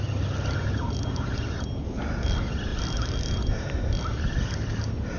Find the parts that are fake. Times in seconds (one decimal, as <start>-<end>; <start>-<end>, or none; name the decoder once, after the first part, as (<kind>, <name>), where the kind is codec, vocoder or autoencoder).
none